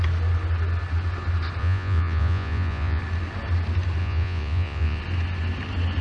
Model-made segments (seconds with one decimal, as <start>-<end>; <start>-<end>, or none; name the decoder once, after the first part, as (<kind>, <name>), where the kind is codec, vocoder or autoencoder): 1.6-3.0 (vocoder, Vocos); 4.0-5.0